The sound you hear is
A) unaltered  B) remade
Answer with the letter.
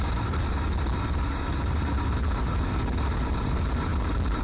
B